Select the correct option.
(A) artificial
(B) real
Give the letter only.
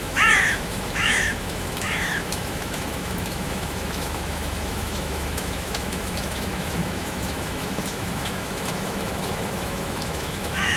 A